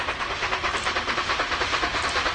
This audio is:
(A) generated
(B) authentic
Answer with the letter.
B